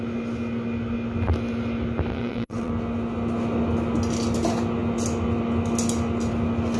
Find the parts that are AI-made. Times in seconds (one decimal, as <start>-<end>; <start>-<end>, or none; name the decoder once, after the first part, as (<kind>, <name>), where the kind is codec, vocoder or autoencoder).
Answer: 2.1-2.7 (vocoder, WaveNeXt)